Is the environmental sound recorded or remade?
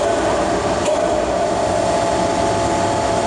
recorded